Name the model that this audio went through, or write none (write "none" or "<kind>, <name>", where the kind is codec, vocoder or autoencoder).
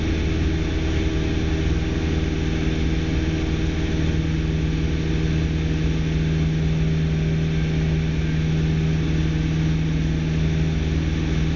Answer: none